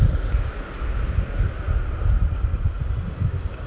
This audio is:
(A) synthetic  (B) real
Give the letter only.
B